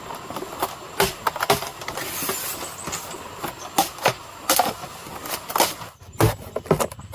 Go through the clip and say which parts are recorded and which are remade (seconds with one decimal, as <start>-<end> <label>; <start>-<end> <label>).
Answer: 0.0-7.1 recorded